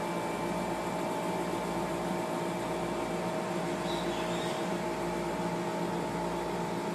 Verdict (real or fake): real